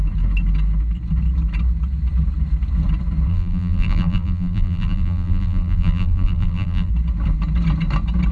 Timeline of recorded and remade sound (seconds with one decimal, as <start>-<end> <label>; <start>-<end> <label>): 0.0-3.3 recorded; 3.3-6.9 remade; 6.9-8.3 recorded